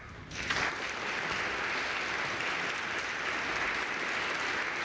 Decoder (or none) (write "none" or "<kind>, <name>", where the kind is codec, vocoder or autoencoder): none